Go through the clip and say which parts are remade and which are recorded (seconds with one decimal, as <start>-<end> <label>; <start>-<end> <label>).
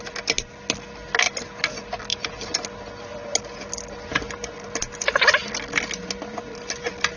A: 0.0-7.2 recorded